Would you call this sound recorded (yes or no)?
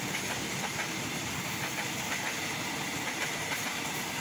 yes